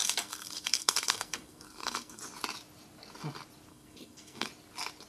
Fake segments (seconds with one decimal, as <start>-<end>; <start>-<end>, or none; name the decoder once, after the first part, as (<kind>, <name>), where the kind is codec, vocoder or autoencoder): 0.0-2.2 (codec, SNAC); 3.7-4.5